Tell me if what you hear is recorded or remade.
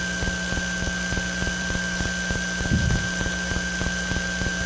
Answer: recorded